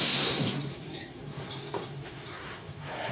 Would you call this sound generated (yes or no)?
yes